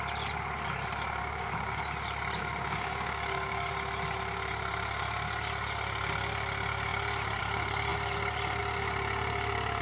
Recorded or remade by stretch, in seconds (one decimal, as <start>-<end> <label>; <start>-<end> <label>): 0.0-1.2 recorded; 1.2-1.8 remade; 1.8-2.4 recorded; 2.4-3.7 remade; 3.7-9.8 recorded